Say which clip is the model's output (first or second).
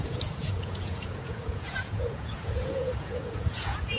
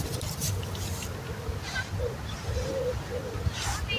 first